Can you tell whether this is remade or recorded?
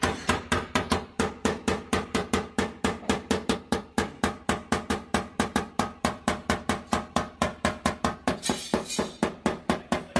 remade